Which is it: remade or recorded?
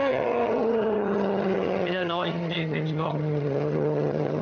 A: remade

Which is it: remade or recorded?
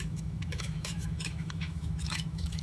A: remade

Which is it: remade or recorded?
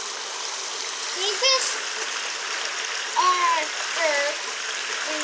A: recorded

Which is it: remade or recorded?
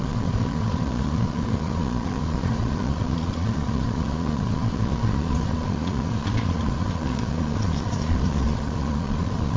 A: remade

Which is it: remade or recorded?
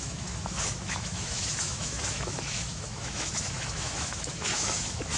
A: remade